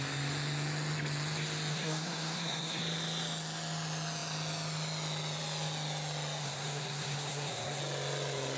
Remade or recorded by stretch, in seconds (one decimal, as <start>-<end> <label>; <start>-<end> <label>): 0.0-1.7 recorded; 1.7-2.8 remade; 2.8-6.4 recorded; 6.4-7.8 remade; 7.8-8.6 recorded